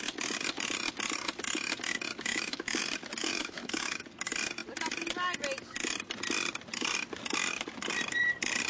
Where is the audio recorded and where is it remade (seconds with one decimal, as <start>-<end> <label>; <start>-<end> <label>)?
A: 0.0-2.3 recorded; 2.3-2.8 remade; 2.8-3.2 recorded; 3.2-4.0 remade; 4.0-8.7 recorded